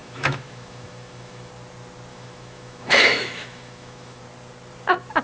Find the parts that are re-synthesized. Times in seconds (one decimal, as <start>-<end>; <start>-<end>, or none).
0.0-1.5; 2.1-4.2